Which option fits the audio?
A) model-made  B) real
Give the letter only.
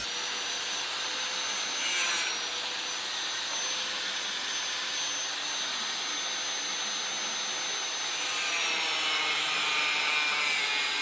B